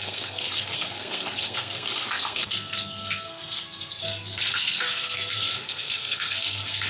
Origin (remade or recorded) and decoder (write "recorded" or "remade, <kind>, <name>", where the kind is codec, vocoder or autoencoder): remade, codec, SNAC